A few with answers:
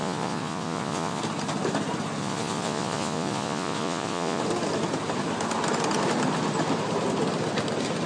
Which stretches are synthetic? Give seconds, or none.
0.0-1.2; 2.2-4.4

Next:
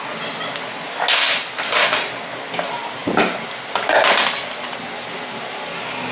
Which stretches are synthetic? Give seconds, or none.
none

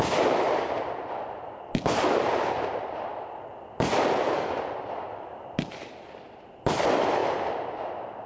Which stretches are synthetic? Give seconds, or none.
none

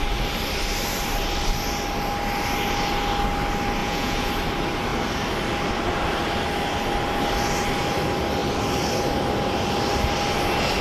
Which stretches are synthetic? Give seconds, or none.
3.8-4.3

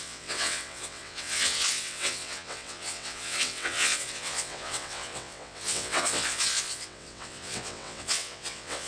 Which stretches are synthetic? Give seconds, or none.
0.0-8.9

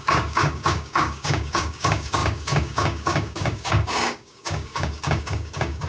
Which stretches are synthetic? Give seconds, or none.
0.0-5.9